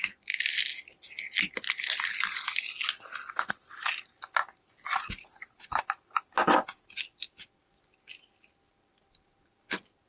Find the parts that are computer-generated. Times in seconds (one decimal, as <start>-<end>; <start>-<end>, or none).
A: none